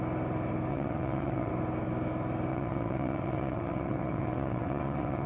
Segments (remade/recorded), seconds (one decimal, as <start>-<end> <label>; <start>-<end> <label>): 0.0-0.7 recorded; 0.7-1.5 remade; 1.5-2.5 recorded; 2.5-5.3 remade